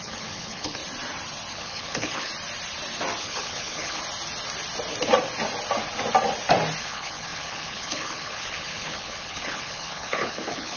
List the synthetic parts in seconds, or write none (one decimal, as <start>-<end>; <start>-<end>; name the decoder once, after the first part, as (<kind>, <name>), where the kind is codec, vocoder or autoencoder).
0.0-0.8 (codec, HILCodec); 1.5-2.3; 3.2-4.0; 6.8-10.8